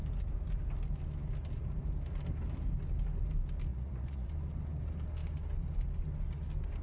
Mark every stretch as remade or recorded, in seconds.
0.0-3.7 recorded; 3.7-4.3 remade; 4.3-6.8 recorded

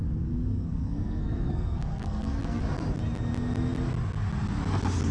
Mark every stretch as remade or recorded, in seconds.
0.0-0.5 recorded; 0.5-2.6 remade; 2.6-5.1 recorded

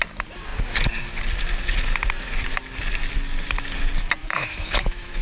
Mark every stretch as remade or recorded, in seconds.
0.0-4.2 recorded; 4.2-5.2 remade

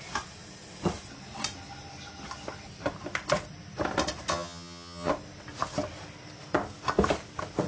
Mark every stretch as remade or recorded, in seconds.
0.0-4.3 recorded; 4.3-5.1 remade; 5.1-7.7 recorded